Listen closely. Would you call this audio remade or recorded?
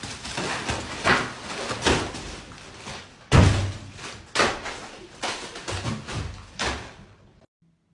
recorded